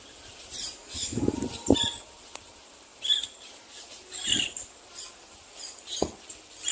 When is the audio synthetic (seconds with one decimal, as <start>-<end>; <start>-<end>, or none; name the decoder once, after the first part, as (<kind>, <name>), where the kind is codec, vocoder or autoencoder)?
0.8-1.4 (autoencoder, DAC-VAE)